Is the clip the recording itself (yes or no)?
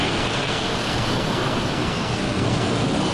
no